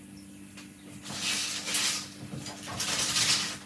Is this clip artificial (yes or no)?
no